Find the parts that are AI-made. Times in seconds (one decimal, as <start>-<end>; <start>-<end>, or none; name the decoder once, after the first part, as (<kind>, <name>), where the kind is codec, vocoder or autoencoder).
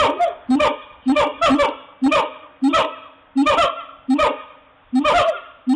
none